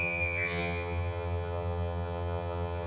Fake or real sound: fake